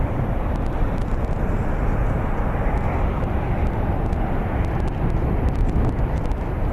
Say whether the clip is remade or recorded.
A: recorded